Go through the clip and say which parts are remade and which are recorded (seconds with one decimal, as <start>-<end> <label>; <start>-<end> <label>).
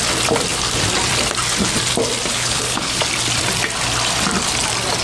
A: 0.0-2.3 recorded; 2.3-3.0 remade; 3.0-5.0 recorded